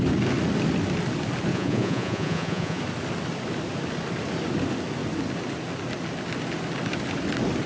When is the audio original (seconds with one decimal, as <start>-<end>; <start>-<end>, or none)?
0.0-1.5; 2.8-7.7